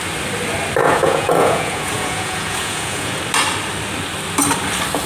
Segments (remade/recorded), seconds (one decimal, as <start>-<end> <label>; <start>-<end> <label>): 0.0-0.8 recorded; 0.8-3.2 remade; 3.2-5.1 recorded